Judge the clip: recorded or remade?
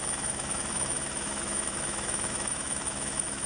remade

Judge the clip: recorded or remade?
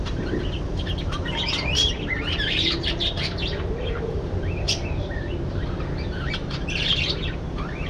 remade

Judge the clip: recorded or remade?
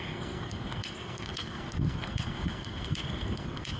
remade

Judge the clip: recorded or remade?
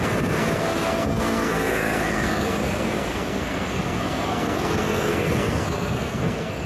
remade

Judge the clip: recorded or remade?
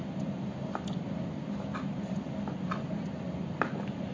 recorded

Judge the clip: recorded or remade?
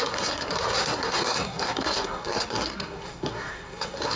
remade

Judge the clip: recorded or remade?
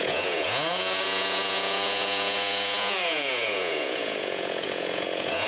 remade